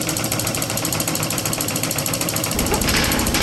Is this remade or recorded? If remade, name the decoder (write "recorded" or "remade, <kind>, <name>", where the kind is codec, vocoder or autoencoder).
remade, vocoder, BigVGAN v2